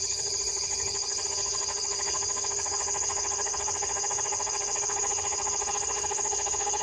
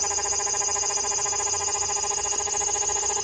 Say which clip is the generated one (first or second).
first